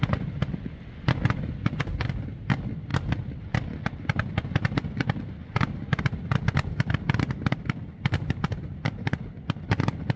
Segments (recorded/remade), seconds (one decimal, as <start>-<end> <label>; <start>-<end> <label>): 0.0-10.2 recorded